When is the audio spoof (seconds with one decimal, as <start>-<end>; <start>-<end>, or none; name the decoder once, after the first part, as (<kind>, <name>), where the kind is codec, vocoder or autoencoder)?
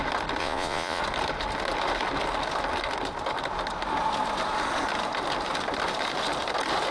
0.4-1.0 (vocoder, Vocos)